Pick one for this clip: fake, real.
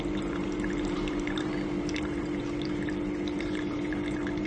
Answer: fake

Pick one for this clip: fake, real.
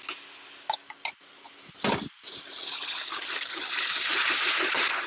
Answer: real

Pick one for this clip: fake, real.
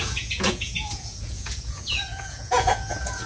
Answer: fake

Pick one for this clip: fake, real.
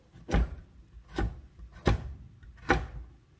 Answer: real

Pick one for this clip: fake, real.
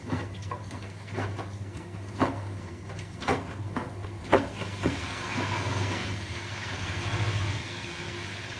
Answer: fake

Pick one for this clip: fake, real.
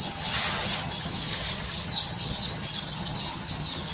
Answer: fake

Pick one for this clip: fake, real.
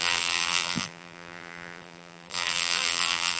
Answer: fake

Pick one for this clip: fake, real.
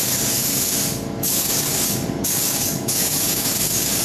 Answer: fake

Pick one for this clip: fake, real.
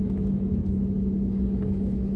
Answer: fake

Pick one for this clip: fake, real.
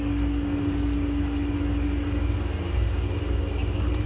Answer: real